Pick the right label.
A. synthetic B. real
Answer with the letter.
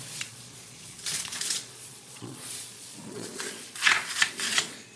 A